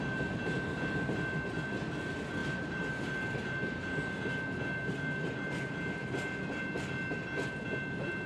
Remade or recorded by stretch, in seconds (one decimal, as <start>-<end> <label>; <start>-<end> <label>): 0.0-2.4 recorded; 2.4-2.9 remade; 2.9-8.3 recorded